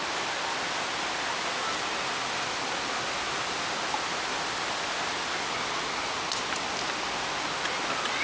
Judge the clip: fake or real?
real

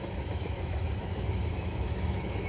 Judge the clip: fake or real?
fake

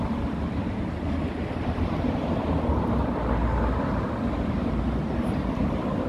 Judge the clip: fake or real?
real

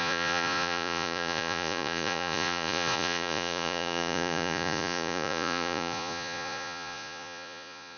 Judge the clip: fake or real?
fake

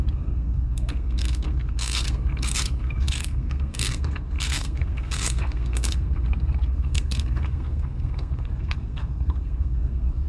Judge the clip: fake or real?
fake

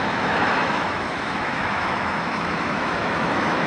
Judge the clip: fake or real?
fake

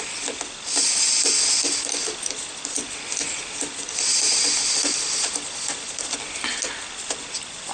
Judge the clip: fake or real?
real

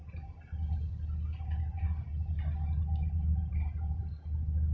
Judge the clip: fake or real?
real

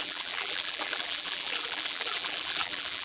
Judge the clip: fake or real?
fake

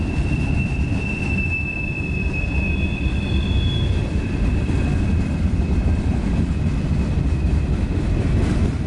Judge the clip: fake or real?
fake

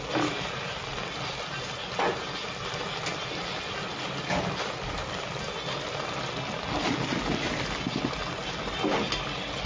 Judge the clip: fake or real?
real